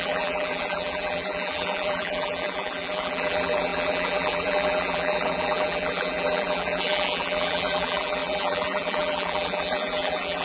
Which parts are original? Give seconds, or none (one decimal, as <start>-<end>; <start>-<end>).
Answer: none